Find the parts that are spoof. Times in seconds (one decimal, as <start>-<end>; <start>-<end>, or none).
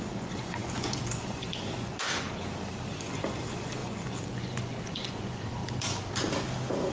0.0-1.9; 2.9-5.6